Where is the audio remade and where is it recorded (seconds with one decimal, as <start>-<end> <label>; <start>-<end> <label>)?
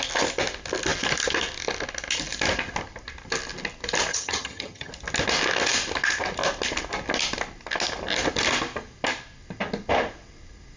0.0-4.1 recorded; 4.1-4.9 remade; 4.9-10.8 recorded